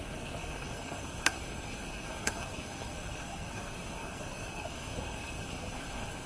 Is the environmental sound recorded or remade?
remade